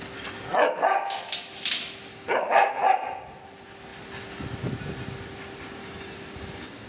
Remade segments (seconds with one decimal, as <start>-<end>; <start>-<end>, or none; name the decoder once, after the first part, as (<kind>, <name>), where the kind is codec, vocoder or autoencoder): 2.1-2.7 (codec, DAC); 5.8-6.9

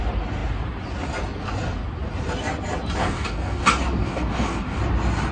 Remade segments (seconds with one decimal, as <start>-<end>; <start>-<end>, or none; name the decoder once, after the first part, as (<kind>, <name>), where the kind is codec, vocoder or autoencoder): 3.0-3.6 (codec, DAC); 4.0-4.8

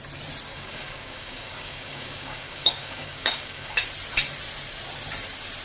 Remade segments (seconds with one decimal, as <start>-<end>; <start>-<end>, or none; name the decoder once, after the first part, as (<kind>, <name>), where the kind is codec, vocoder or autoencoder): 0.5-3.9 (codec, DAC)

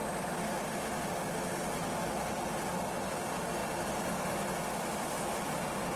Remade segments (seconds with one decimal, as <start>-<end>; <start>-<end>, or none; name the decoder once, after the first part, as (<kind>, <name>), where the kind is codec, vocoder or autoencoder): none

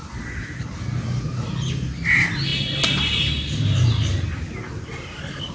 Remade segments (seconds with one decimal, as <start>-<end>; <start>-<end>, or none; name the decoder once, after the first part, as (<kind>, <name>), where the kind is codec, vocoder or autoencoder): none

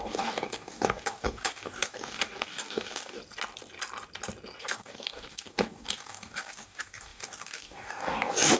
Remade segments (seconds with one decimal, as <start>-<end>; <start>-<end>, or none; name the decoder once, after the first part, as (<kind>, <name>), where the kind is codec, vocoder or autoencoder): 0.0-3.2 (codec, DAC); 4.6-8.6